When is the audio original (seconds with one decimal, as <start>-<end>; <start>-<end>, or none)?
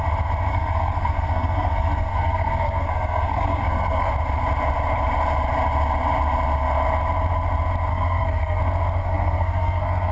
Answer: 0.0-0.5; 4.1-7.9; 8.6-9.0